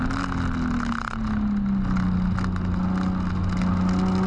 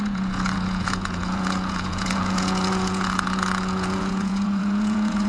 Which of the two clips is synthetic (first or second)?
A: second